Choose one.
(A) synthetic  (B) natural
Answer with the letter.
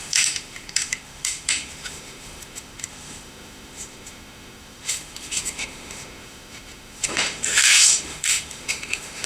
A